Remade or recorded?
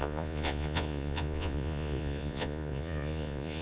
remade